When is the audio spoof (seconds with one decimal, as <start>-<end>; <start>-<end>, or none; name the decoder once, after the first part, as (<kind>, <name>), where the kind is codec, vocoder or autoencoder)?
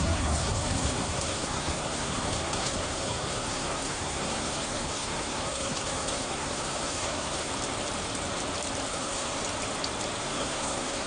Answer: 0.0-7.5 (codec, SNAC); 8.9-9.4; 10.2-11.1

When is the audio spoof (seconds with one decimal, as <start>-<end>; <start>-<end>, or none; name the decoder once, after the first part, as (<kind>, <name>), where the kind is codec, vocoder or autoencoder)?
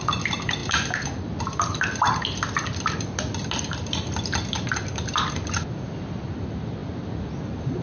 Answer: none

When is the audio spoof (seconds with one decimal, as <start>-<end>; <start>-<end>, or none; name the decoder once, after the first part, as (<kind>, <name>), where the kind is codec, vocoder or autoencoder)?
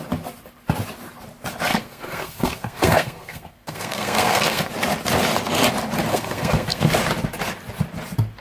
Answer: 1.7-4.7 (codec, SNAC); 6.1-6.9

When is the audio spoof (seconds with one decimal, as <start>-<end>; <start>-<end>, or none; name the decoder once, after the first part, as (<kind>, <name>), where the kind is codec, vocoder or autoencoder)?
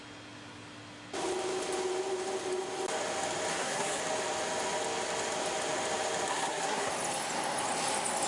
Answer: 3.5-4.0 (codec, SNAC); 6.3-6.9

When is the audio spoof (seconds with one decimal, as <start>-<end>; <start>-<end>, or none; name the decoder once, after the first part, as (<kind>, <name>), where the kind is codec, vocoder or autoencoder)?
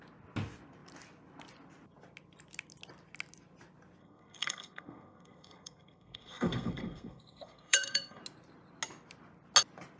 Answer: 4.0-8.2 (codec, SNAC)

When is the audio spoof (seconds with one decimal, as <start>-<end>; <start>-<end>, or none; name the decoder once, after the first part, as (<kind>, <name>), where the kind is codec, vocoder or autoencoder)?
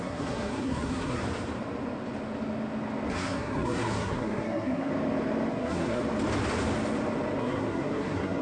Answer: 0.0-1.2 (codec, SNAC); 3.1-4.9; 5.5-6.0; 7.4-8.4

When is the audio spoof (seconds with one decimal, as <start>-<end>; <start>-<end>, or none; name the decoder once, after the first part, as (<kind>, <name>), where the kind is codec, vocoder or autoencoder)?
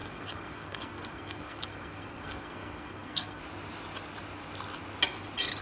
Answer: 0.0-3.4 (codec, SNAC)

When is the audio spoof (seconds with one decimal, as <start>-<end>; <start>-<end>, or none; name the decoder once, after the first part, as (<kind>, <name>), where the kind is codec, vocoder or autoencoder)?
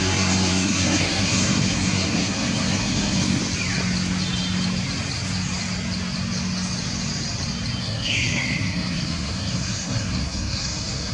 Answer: 0.0-3.4 (codec, SNAC); 7.8-11.1